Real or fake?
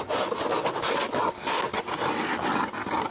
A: real